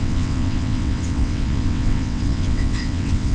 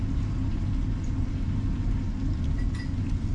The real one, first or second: second